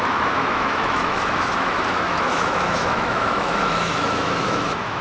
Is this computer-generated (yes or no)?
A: yes